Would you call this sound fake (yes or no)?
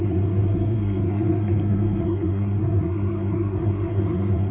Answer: yes